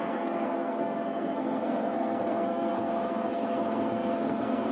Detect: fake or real fake